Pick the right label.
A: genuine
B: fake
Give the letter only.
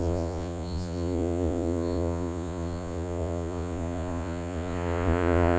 B